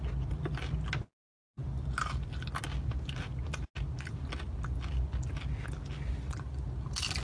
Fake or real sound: real